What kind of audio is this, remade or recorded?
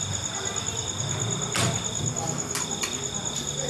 recorded